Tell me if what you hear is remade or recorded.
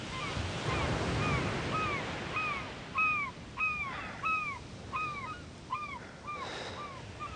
recorded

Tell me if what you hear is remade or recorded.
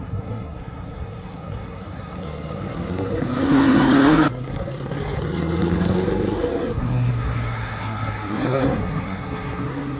remade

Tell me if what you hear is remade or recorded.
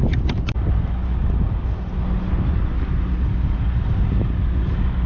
recorded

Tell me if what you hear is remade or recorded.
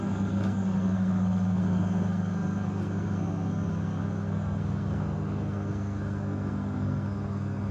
remade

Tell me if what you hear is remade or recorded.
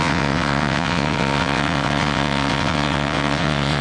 remade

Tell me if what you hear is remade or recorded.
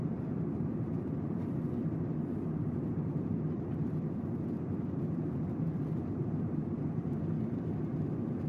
remade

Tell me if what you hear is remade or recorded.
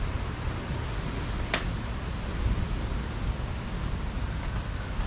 recorded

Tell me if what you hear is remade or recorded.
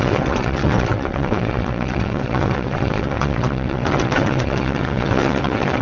remade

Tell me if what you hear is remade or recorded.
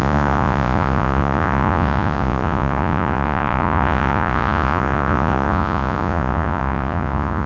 remade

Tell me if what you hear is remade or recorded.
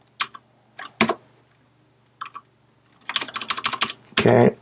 recorded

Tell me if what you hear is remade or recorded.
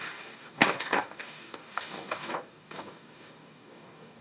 remade